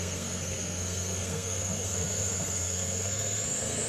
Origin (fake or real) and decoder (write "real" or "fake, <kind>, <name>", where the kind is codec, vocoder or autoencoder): fake, codec, SNAC